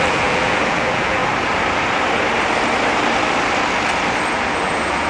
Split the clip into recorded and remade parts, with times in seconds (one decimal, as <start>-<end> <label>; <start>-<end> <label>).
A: 0.0-1.2 remade; 1.2-4.3 recorded; 4.3-5.1 remade